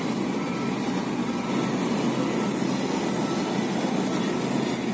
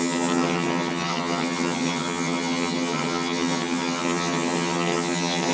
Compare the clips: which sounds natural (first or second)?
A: first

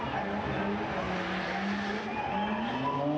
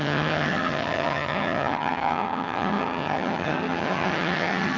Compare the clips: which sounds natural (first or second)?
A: first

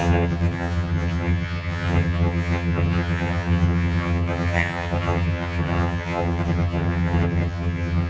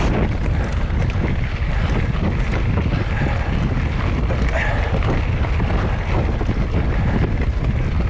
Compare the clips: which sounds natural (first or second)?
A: second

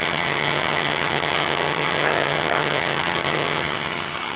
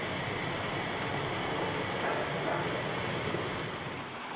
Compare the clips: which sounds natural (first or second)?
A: second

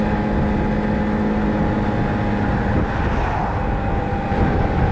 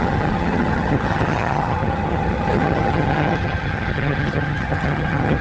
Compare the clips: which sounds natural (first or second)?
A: first